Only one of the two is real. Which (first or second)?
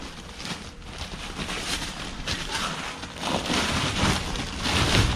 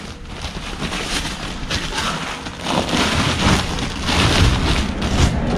second